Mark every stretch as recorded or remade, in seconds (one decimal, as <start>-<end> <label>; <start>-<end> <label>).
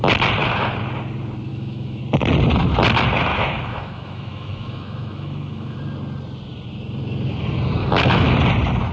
0.0-1.5 recorded; 1.5-2.0 remade; 2.0-3.3 recorded; 3.3-5.8 remade; 5.8-7.8 recorded; 7.8-8.3 remade; 8.3-8.9 recorded